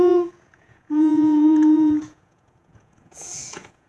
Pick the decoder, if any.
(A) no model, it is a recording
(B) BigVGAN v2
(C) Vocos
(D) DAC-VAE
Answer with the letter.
C